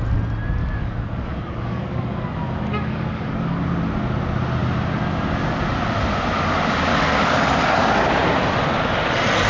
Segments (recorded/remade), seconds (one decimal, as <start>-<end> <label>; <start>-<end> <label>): 0.0-0.6 recorded; 0.6-3.6 remade; 3.6-6.9 recorded; 6.9-8.1 remade; 8.1-9.5 recorded